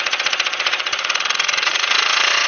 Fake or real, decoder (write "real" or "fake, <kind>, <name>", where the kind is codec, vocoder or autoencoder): fake, vocoder, Vocos